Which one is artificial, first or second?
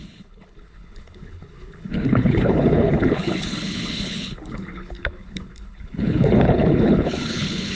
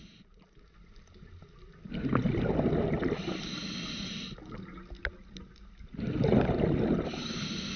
first